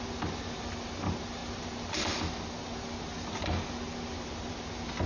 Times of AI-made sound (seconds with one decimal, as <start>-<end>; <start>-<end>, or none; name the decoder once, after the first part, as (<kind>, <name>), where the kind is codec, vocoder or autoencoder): none